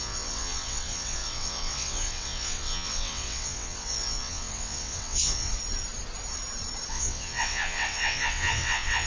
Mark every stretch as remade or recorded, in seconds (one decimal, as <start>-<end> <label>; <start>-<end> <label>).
0.0-5.5 remade; 5.5-6.9 recorded; 6.9-9.1 remade